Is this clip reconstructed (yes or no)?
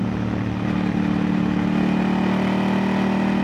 no